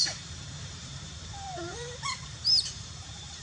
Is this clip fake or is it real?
fake